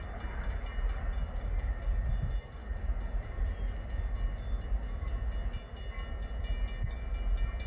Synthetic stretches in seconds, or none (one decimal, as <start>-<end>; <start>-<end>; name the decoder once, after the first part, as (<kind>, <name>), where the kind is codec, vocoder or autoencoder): none